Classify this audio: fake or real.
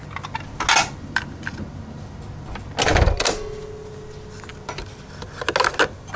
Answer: real